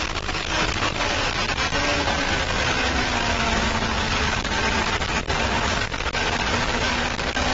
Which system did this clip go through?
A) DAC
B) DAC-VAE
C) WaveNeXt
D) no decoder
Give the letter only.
A